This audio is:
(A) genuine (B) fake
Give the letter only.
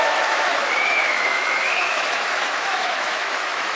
B